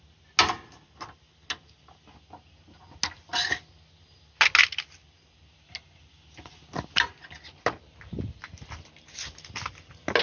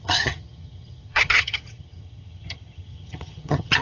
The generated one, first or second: second